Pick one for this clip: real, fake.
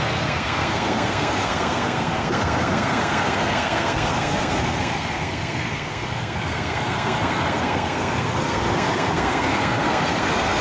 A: fake